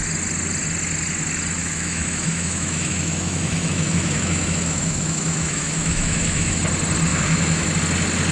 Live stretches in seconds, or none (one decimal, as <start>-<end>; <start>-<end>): 0.0-1.6; 6.6-7.1; 7.7-8.3